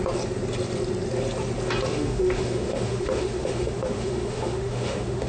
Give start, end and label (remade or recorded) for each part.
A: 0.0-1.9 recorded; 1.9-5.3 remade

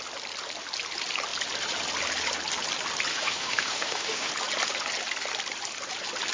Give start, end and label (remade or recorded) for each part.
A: 0.0-3.1 recorded; 3.1-4.3 remade; 4.3-6.3 recorded

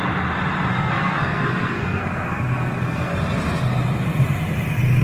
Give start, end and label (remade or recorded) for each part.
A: 0.0-0.7 recorded; 0.7-3.1 remade; 3.1-5.0 recorded

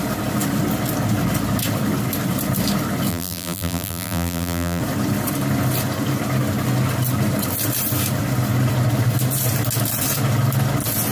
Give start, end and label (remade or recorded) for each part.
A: 0.0-3.1 recorded; 3.1-4.8 remade; 4.8-11.1 recorded

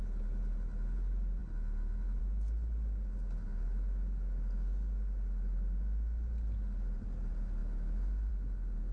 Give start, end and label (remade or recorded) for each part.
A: 0.0-8.9 recorded

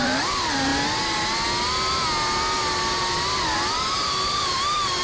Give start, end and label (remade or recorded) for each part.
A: 0.0-0.7 remade; 0.7-3.0 recorded; 3.0-5.0 remade